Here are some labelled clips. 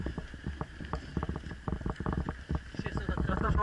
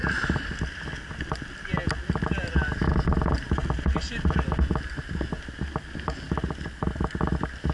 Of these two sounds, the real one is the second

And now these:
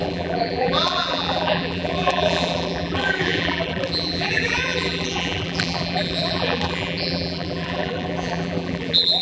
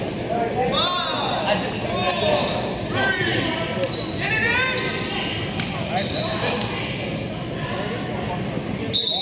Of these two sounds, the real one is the second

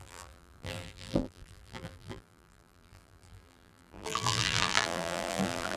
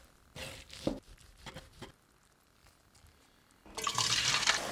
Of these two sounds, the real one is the second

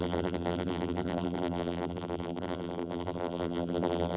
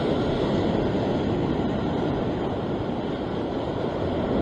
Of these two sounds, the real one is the second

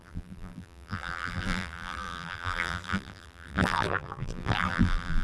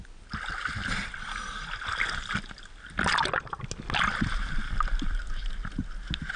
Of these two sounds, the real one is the second